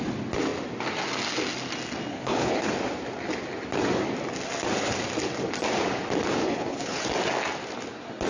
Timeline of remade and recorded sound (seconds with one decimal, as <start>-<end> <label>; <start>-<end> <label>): 0.0-2.1 recorded; 2.1-2.7 remade; 2.7-6.4 recorded; 6.4-7.0 remade; 7.0-8.3 recorded

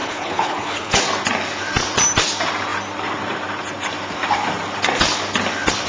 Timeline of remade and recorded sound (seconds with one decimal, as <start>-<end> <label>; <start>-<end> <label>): 0.0-1.0 remade; 1.0-5.9 recorded

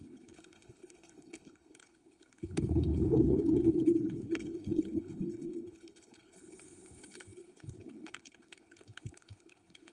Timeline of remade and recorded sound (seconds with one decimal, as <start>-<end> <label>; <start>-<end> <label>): 0.0-9.9 remade

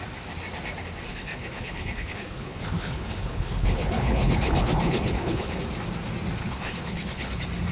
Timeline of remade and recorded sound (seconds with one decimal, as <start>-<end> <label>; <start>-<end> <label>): 0.0-1.1 recorded; 1.1-5.6 remade; 5.6-6.4 recorded; 6.4-7.3 remade; 7.3-7.7 recorded

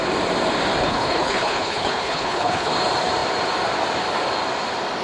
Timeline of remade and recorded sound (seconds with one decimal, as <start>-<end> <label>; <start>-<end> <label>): 0.0-0.8 recorded; 0.8-2.7 remade; 2.7-5.0 recorded

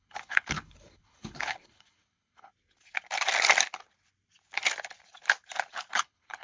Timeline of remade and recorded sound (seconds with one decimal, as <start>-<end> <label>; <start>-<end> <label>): 0.0-2.5 remade; 2.5-5.9 recorded; 5.9-6.4 remade